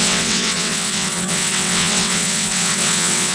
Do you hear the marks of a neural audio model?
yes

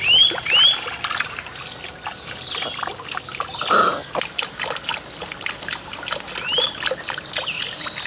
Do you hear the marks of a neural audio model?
no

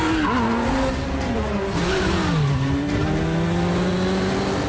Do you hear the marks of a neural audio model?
no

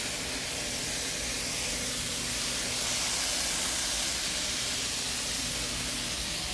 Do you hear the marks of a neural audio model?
no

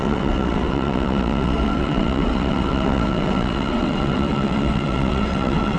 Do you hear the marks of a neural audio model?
yes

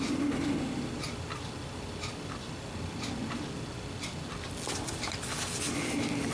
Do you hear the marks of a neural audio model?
no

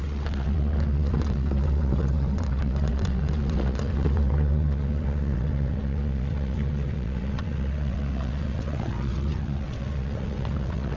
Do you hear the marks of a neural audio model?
yes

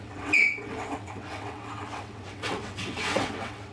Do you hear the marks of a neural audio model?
yes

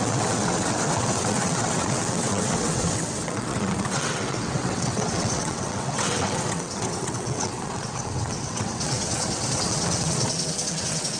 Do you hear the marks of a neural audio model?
yes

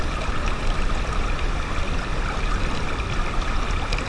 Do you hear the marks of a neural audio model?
no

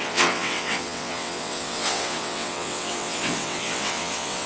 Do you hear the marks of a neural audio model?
yes